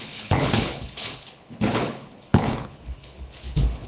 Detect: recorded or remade remade